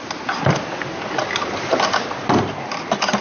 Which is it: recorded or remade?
recorded